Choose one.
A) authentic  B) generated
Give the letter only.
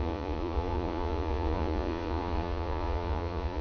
B